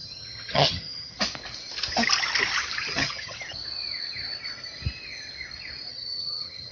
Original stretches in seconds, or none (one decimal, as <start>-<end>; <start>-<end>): 1.2-2.9; 3.4-5.9